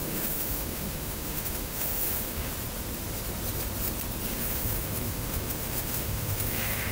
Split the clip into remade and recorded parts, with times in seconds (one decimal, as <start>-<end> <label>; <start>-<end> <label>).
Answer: 0.0-2.5 remade; 2.5-4.3 recorded; 4.3-6.9 remade